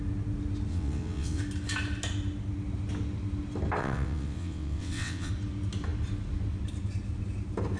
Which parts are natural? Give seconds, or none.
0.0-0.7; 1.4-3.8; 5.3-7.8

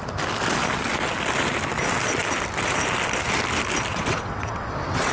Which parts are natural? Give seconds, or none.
0.0-3.9

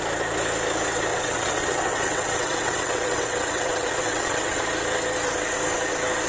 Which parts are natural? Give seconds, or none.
0.0-1.1; 4.6-6.3